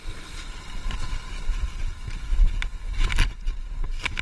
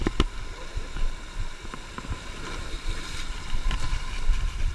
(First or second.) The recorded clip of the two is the first